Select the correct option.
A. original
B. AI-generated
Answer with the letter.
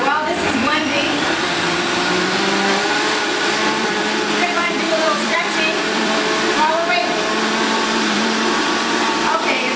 B